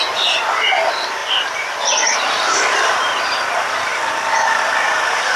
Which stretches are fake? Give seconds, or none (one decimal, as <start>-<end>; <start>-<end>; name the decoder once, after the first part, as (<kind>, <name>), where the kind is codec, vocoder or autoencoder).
1.2-3.2 (vocoder, BigVGAN v2)